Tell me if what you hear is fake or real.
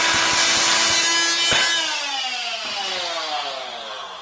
real